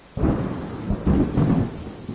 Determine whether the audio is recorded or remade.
recorded